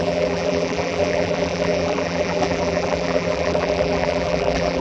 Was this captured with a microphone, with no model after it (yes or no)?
no